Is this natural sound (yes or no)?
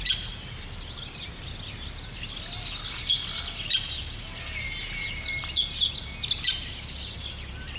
yes